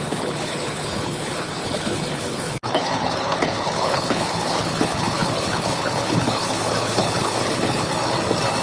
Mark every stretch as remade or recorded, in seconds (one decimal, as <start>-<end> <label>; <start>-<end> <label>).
0.0-7.9 remade; 7.9-8.6 recorded